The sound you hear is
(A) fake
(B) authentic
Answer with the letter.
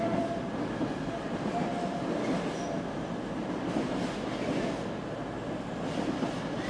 B